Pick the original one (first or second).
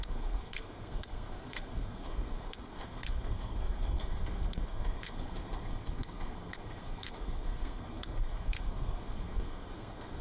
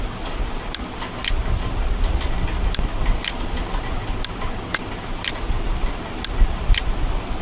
second